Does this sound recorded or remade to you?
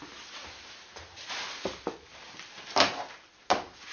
recorded